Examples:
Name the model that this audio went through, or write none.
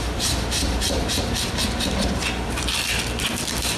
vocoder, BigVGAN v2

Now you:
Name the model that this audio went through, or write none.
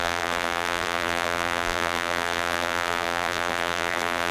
vocoder, BigVGAN v2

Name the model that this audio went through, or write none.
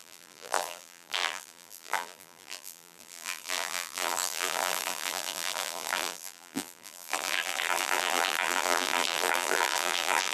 vocoder, BigVGAN v2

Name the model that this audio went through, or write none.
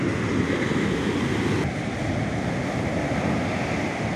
none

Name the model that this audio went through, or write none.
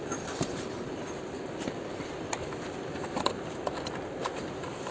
vocoder, BigVGAN v2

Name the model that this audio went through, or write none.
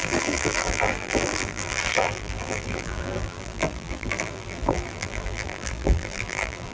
vocoder, BigVGAN v2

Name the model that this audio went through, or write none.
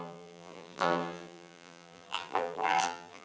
vocoder, BigVGAN v2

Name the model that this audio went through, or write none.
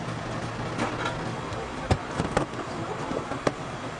none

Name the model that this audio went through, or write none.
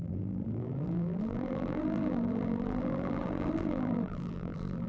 vocoder, BigVGAN v2